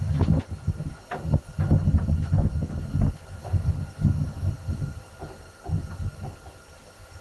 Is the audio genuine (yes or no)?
yes